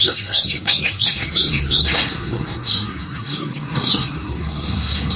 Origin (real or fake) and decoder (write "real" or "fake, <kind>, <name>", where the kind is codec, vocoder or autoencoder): fake, codec, SNAC